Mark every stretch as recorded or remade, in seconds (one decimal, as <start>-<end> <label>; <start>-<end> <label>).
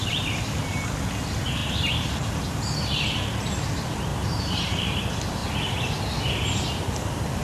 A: 0.0-1.0 remade; 1.0-1.6 recorded; 1.6-2.3 remade; 2.3-4.1 recorded; 4.1-5.0 remade; 5.0-7.4 recorded